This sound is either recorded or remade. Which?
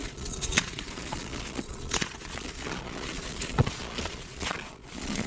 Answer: remade